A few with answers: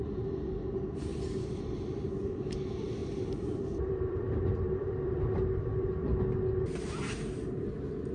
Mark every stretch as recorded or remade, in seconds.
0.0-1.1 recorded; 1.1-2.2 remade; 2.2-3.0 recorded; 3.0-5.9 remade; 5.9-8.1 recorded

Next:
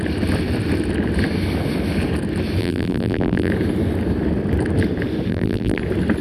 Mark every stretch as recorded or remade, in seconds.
0.0-2.6 recorded; 2.6-3.5 remade; 3.5-5.3 recorded; 5.3-5.8 remade; 5.8-6.2 recorded

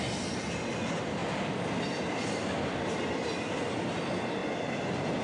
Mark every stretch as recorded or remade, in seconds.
0.0-1.2 recorded; 1.2-4.0 remade; 4.0-4.4 recorded; 4.4-5.2 remade

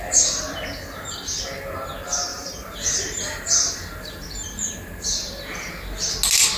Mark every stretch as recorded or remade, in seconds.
0.0-2.3 recorded; 2.3-5.7 remade; 5.7-6.6 recorded